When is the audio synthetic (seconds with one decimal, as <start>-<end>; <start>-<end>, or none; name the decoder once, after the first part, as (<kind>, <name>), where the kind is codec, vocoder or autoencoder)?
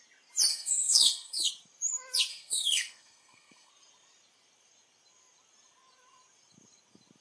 0.5-1.5 (codec, SNAC); 2.3-3.7